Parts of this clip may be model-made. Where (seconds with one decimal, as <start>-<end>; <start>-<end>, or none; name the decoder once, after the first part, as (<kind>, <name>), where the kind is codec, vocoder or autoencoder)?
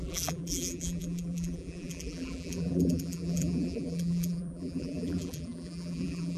0.0-6.4 (vocoder, BigVGAN v2)